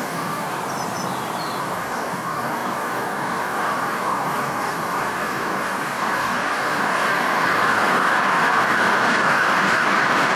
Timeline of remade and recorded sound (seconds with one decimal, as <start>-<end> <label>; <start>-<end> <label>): 0.0-0.6 remade; 0.6-1.6 recorded; 1.6-10.4 remade